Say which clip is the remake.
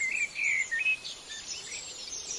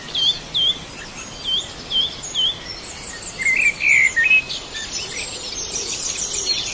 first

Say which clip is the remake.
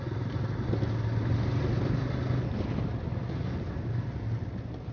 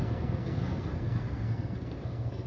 second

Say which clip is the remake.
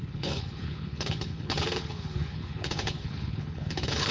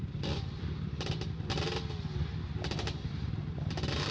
first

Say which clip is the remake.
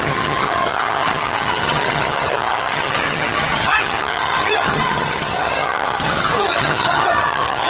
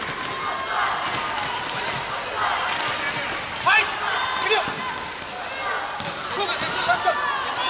first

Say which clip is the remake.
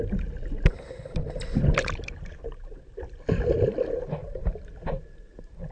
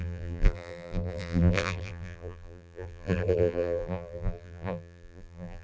second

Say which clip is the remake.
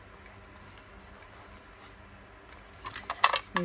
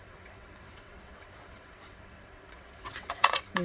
second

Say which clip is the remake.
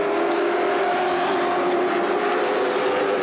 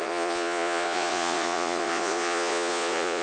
second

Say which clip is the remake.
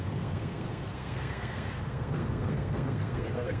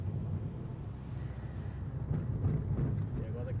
first